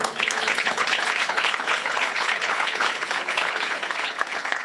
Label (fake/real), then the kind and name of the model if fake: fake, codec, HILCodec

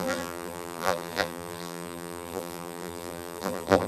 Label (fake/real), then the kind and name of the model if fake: fake, vocoder, BigVGAN v2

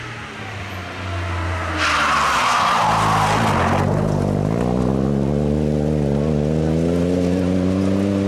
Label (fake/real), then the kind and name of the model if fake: real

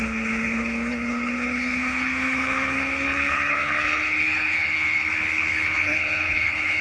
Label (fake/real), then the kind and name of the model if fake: fake, codec, HILCodec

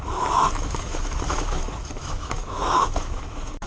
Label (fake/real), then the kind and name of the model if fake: fake, autoencoder, DAC-VAE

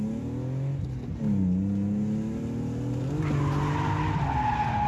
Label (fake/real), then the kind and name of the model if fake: real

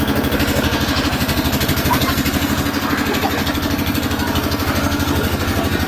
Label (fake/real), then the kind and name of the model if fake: fake, codec, SNAC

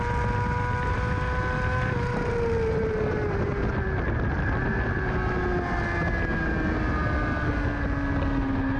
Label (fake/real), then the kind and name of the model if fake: real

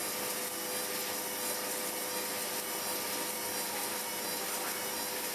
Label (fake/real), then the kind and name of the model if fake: real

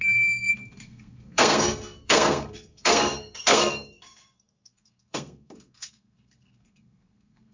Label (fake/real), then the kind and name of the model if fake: fake, codec, SNAC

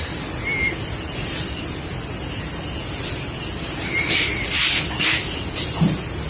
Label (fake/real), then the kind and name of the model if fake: real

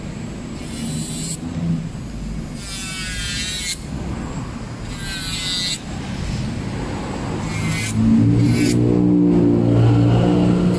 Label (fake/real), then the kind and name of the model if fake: real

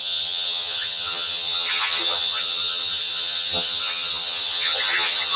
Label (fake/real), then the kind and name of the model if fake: fake, vocoder, HiFi-GAN